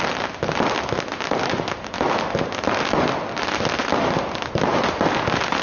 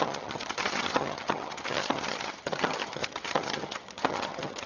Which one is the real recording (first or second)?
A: first